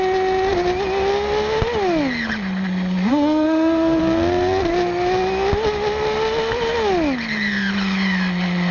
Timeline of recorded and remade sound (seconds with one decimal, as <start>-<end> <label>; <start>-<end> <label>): 0.0-3.1 recorded; 3.1-4.0 remade; 4.0-8.7 recorded